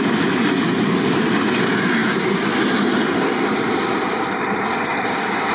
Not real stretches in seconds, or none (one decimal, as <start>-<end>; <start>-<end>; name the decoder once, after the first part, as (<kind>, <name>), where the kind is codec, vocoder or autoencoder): none